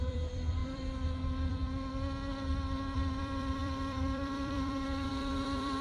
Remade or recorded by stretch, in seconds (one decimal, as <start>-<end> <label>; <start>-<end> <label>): 0.0-1.6 remade; 1.6-3.2 recorded; 3.2-5.8 remade